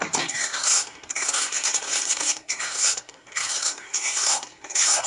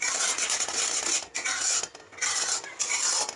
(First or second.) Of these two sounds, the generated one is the first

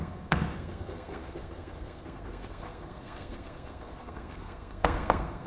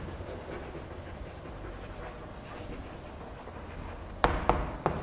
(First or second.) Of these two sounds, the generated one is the first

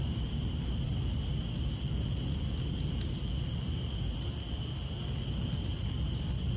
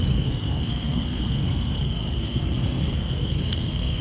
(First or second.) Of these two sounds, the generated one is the second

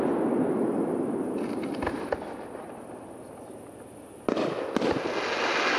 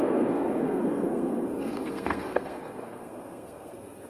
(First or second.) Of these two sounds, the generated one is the second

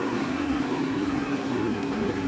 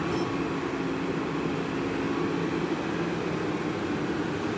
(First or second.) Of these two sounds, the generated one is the first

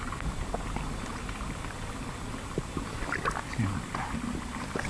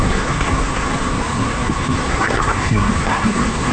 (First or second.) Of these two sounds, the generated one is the second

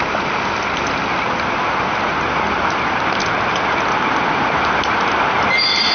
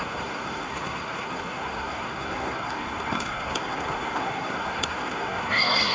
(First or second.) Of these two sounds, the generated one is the second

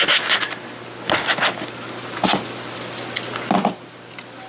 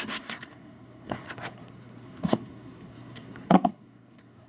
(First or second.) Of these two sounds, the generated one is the second